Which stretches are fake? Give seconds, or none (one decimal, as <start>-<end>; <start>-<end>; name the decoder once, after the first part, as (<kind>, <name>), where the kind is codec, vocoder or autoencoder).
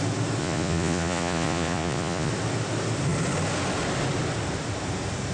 0.4-2.3 (vocoder, Vocos)